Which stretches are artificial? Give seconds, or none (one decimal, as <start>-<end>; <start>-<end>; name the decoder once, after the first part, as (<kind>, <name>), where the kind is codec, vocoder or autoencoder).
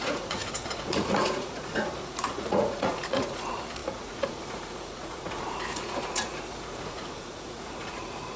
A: 0.0-8.4 (vocoder, Vocos)